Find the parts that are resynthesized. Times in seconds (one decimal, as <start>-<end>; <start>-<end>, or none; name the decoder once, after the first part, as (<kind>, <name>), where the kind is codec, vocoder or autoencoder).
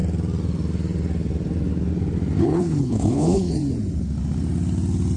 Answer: 2.4-3.6 (codec, HILCodec)